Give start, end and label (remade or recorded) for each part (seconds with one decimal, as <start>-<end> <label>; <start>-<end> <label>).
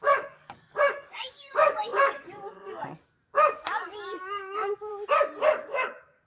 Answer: 0.0-4.9 remade; 4.9-5.6 recorded; 5.6-6.3 remade